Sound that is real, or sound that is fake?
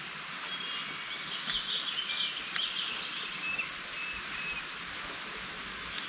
real